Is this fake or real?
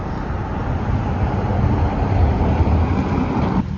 real